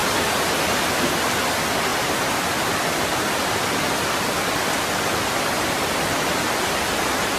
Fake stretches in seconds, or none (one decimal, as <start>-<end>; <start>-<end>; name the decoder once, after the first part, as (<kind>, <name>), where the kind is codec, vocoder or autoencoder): 1.9-6.3 (vocoder, BigVGAN v2)